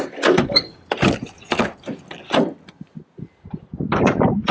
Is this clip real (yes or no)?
yes